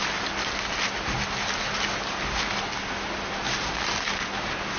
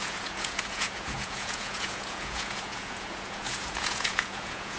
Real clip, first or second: first